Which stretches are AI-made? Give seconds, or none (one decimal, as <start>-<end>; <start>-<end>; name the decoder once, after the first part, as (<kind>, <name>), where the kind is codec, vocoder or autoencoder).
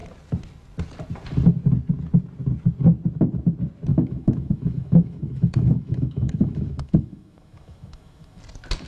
3.9-8.4 (autoencoder, DAC-VAE)